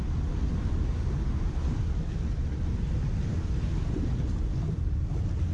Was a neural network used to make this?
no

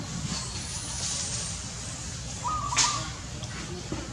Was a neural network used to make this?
no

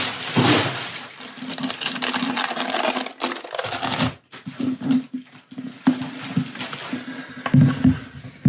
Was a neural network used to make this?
no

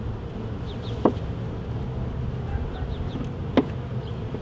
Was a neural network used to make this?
no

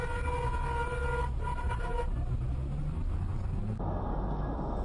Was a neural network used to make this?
no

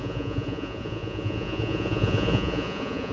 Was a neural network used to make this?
yes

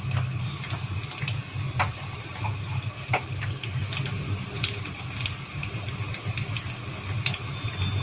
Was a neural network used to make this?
no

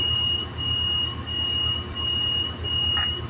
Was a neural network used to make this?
no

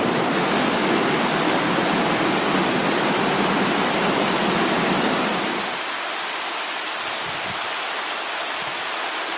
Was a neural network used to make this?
no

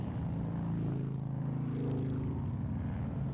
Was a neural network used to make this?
no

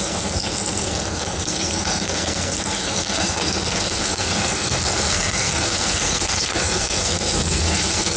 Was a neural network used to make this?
yes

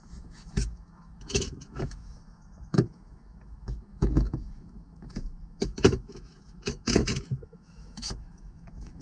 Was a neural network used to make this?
yes